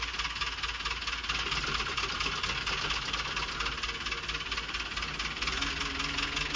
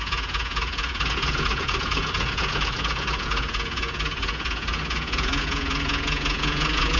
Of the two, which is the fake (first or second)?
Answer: second